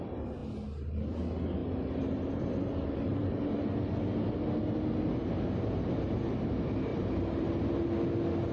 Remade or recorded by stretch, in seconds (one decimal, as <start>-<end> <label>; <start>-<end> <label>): 0.0-1.6 recorded; 1.6-3.4 remade; 3.4-6.9 recorded; 6.9-7.5 remade; 7.5-8.5 recorded